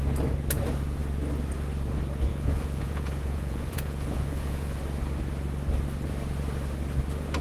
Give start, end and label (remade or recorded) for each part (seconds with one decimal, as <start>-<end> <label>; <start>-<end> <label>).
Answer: 0.0-2.3 recorded; 2.3-4.8 remade; 4.8-7.4 recorded